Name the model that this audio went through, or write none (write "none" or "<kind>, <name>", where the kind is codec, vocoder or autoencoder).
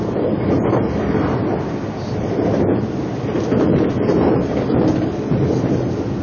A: none